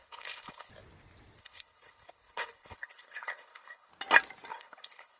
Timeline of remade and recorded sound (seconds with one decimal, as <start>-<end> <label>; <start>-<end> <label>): 0.0-0.7 remade; 0.7-1.4 recorded; 1.4-3.9 remade; 3.9-4.5 recorded; 4.5-5.2 remade